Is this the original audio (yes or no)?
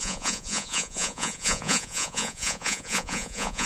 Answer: no